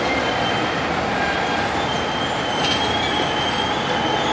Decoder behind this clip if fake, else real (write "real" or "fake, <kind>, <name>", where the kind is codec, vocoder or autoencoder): real